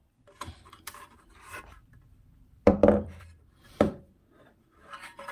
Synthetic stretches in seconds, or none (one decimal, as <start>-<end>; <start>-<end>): 0.0-5.3